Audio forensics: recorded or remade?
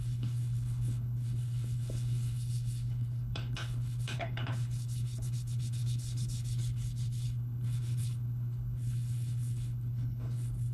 remade